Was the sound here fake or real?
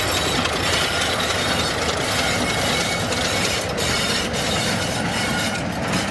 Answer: real